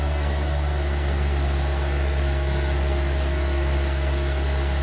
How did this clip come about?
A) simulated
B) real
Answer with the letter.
A